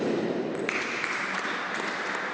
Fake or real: real